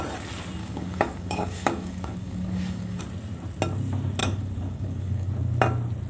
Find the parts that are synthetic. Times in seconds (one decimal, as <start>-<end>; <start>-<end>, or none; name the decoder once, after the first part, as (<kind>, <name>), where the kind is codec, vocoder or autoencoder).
0.6-3.0 (codec, DAC); 4.2-5.3